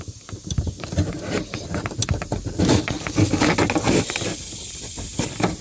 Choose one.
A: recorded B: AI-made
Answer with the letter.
A